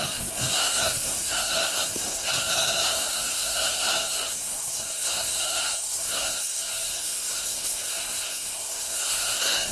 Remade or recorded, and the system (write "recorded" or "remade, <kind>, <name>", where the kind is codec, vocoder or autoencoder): remade, codec, SNAC